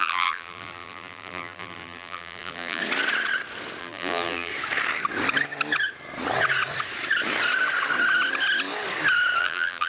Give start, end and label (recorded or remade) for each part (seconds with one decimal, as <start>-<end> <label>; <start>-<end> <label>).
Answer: 0.0-2.8 remade; 2.8-3.8 recorded; 3.8-4.5 remade; 4.5-9.4 recorded; 9.4-9.9 remade